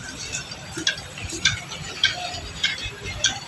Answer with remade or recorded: recorded